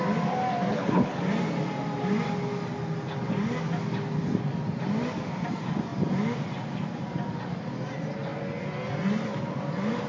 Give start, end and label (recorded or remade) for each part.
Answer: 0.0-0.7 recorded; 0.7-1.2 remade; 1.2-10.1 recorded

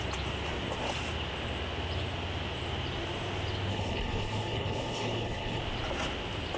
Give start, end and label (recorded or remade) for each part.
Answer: 0.0-3.7 recorded; 3.7-5.6 remade; 5.6-6.6 recorded

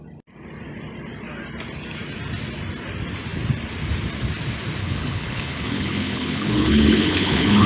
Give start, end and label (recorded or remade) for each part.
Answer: 0.0-4.8 recorded; 4.8-7.7 remade

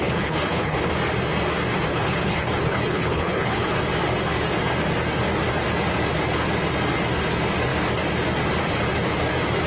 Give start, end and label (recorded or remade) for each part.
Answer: 0.0-0.9 remade; 0.9-1.9 recorded; 1.9-3.8 remade; 3.8-9.7 recorded

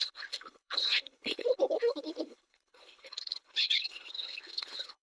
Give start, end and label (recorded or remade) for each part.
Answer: 0.0-5.0 remade

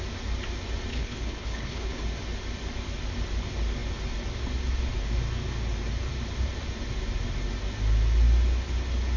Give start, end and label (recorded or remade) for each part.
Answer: 0.0-0.9 recorded; 0.9-2.0 remade; 2.0-9.2 recorded

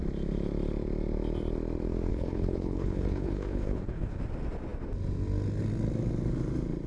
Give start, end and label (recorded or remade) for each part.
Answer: 0.0-2.1 recorded; 2.1-4.2 remade; 4.2-6.9 recorded

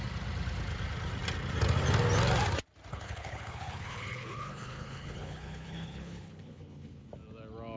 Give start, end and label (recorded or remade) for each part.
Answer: 0.0-2.9 recorded; 2.9-7.1 remade; 7.1-7.8 recorded